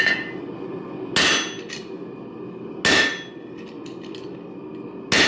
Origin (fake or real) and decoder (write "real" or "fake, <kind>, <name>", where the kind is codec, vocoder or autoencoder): real